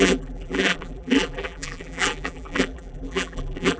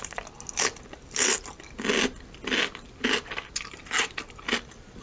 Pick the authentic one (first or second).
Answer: second